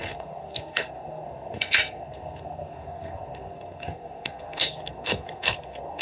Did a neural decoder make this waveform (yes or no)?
yes